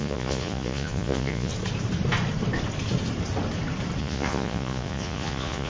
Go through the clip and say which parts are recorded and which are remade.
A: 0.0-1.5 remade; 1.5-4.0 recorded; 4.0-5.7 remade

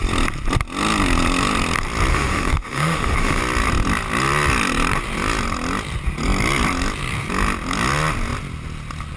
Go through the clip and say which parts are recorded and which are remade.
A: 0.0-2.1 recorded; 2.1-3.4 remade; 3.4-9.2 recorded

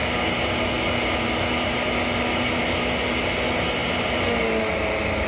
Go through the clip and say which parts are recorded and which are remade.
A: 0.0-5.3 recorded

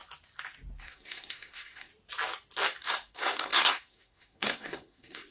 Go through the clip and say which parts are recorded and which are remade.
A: 0.0-0.8 recorded; 0.8-1.9 remade; 1.9-2.8 recorded; 2.8-5.3 remade